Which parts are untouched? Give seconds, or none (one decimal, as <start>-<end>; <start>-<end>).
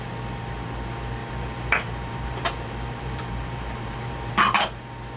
0.0-1.2; 4.3-5.2